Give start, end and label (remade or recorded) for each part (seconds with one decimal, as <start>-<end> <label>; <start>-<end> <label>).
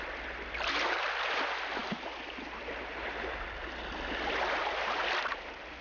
0.0-5.8 recorded